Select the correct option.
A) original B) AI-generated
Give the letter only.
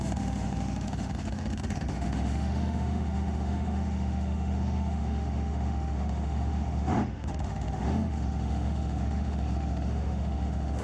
B